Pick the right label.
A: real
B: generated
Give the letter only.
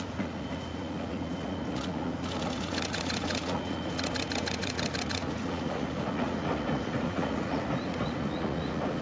B